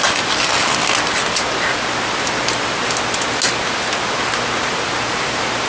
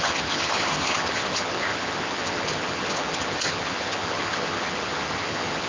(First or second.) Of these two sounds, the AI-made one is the second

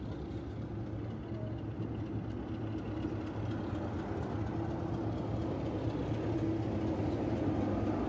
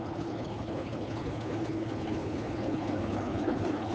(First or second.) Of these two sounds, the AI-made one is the second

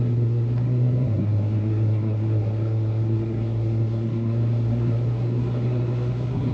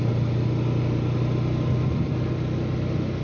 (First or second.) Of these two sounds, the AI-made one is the first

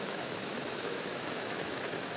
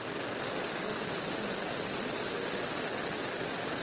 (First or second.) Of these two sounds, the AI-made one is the first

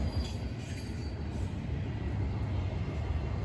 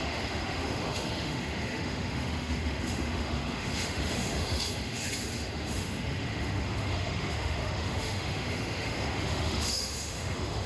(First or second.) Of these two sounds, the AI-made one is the second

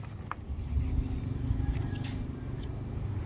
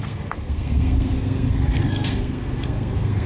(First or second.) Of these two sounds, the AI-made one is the second